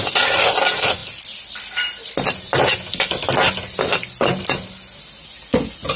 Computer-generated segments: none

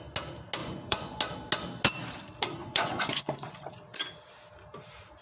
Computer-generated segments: 0.6-1.2 (vocoder, Vocos); 2.6-3.7

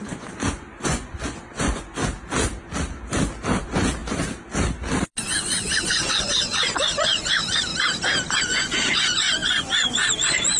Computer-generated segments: 0.0-2.0 (vocoder, Vocos); 3.6-4.0; 5.1-7.7; 8.4-10.6

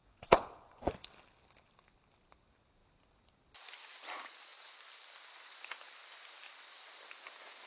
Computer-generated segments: 0.0-1.1 (vocoder, Vocos)

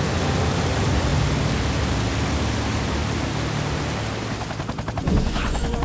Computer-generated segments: 5.0-5.8 (vocoder, Vocos)

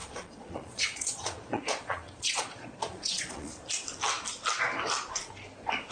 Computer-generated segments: 0.0-3.5 (vocoder, Vocos)

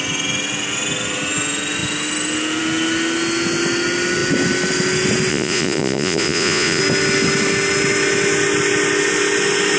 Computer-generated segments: 5.3-6.8 (vocoder, Vocos)

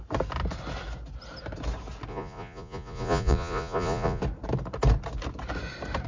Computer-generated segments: 2.1-4.2 (vocoder, Vocos)